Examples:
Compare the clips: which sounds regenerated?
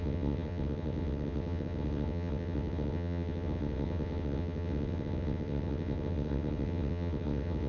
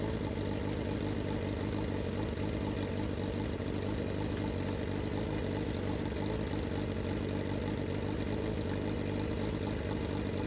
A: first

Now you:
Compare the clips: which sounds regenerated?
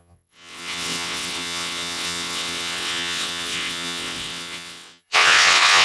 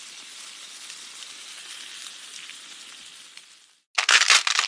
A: first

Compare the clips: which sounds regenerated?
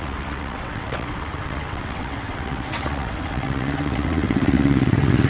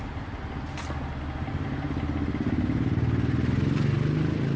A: first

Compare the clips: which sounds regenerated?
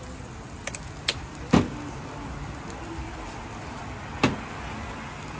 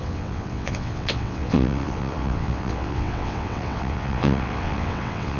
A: second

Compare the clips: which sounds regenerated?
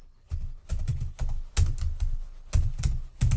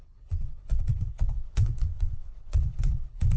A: second